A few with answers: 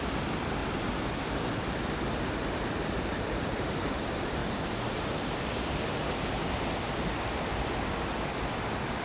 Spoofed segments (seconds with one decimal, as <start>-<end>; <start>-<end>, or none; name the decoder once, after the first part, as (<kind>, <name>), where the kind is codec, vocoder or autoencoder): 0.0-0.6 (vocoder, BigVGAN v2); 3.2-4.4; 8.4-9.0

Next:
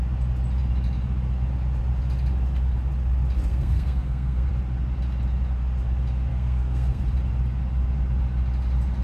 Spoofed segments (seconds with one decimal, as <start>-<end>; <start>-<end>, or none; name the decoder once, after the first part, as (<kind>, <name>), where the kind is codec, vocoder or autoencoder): 3.5-4.5 (codec, SNAC); 6.3-7.0

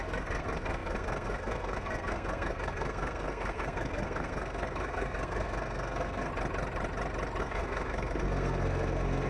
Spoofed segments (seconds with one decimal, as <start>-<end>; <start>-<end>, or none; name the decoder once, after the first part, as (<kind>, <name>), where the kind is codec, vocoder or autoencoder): 0.0-6.3 (codec, SNAC); 7.4-9.3